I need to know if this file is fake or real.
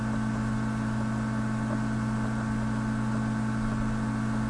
real